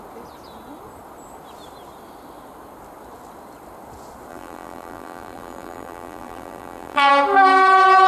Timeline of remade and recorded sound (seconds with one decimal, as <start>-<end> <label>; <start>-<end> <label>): 0.0-4.3 recorded; 4.3-7.1 remade; 7.1-8.1 recorded

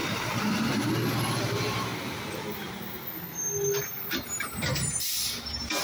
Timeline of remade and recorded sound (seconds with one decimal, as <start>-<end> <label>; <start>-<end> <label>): 0.0-5.8 remade

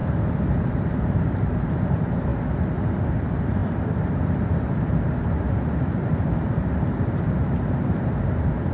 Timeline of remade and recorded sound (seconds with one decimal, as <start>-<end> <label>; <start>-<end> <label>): 0.0-0.7 recorded; 0.7-2.3 remade; 2.3-3.1 recorded; 3.1-8.7 remade

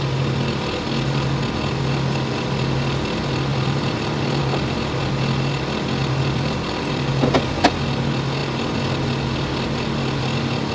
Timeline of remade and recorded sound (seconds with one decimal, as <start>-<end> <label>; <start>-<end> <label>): 0.0-3.5 recorded; 3.5-4.4 remade; 4.4-6.0 recorded; 6.0-7.1 remade; 7.1-10.7 recorded

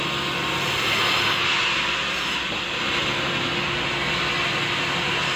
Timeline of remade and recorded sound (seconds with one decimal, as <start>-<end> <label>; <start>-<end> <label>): 0.0-5.4 recorded